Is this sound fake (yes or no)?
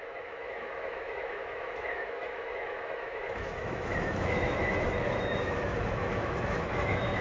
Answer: yes